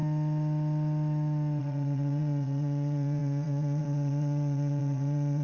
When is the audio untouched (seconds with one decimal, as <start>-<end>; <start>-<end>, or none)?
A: 0.0-1.6